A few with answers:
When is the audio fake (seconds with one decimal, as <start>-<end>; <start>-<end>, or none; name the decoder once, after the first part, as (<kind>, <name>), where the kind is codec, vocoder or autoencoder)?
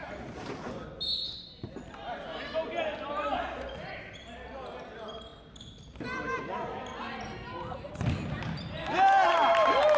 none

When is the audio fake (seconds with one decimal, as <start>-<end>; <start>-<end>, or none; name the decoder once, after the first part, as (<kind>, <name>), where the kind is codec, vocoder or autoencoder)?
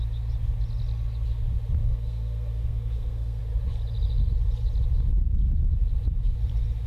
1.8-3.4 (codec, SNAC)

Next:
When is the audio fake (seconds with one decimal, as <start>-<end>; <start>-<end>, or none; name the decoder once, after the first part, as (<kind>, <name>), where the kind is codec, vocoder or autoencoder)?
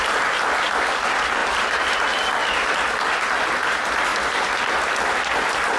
1.4-1.9 (vocoder, BigVGAN v2); 4.1-4.7